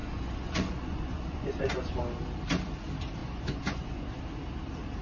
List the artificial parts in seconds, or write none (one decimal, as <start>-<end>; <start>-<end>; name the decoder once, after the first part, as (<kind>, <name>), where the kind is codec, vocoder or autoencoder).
0.0-2.0 (vocoder, Vocos); 3.2-4.2